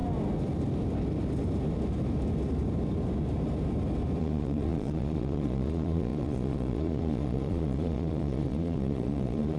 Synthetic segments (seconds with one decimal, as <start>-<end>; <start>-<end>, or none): 4.2-9.6